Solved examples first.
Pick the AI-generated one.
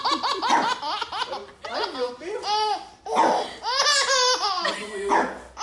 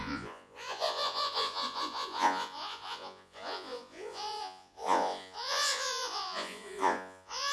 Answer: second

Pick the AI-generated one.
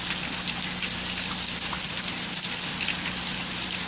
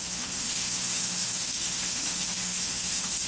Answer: second